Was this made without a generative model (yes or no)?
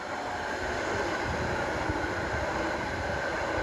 yes